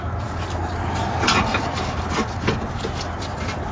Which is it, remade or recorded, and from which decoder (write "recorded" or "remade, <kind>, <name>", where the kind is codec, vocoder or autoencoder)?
recorded